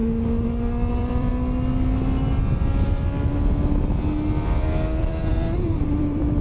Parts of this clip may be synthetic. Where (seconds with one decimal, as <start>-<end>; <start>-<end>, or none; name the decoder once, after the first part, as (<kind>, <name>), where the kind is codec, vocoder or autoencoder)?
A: 0.9-1.3 (vocoder, BigVGAN v2); 5.0-6.4